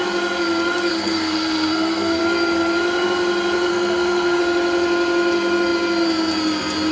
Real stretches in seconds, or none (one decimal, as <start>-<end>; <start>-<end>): 0.0-0.9; 2.2-3.7; 4.4-6.9